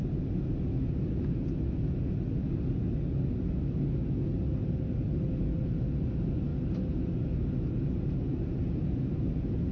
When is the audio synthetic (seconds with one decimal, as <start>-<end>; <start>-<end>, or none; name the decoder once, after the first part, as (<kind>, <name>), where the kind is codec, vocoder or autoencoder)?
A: none